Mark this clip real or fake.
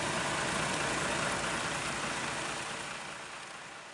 real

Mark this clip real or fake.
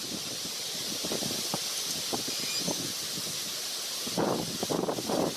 real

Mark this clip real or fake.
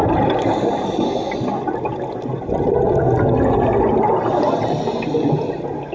real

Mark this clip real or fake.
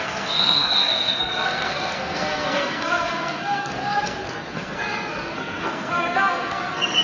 fake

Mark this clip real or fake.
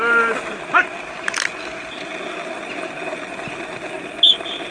real